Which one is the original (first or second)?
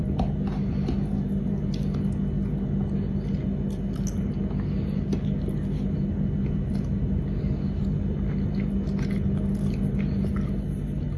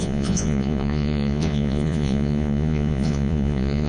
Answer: first